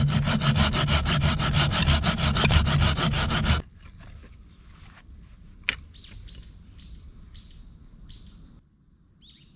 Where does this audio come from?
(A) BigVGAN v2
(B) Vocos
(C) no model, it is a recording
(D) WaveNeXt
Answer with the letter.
C